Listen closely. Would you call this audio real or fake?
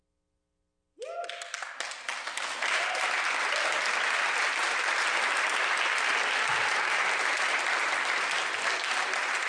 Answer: real